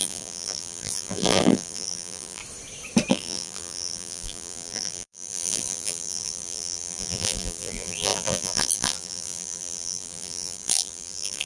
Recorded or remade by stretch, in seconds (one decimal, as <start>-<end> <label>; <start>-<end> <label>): 0.0-2.4 remade; 2.4-3.1 recorded; 3.1-11.5 remade